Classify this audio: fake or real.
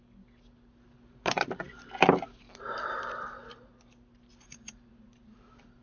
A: real